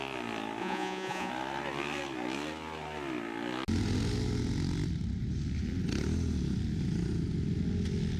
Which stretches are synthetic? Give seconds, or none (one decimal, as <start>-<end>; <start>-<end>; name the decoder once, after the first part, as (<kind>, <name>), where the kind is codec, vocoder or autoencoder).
0.6-1.3 (vocoder, Vocos)